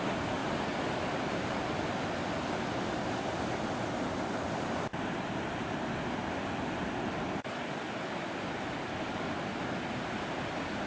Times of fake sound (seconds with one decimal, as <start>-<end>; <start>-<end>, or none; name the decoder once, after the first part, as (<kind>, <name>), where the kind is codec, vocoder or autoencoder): none